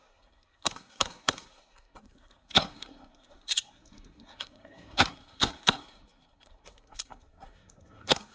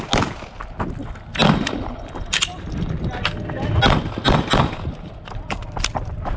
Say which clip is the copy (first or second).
first